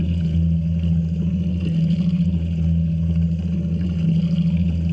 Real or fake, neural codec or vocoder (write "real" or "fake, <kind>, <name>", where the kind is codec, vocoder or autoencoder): real